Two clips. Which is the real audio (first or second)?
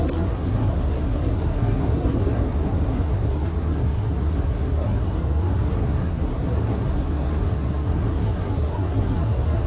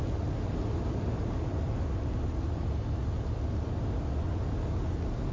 second